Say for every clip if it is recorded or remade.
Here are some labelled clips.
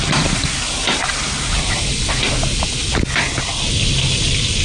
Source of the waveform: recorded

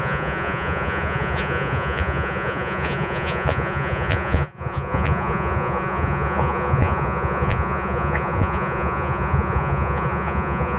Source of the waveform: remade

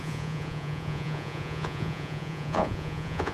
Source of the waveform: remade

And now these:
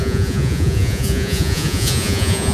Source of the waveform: remade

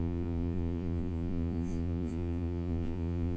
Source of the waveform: remade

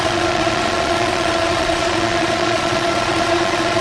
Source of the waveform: remade